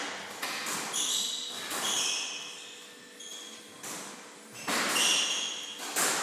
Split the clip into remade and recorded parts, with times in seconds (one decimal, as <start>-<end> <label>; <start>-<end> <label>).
0.0-6.2 recorded